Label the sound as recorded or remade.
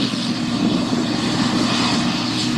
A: recorded